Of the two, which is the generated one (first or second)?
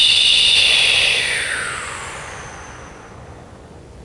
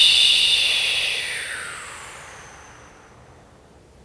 first